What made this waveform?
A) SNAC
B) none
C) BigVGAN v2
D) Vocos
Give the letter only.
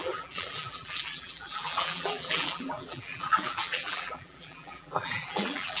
C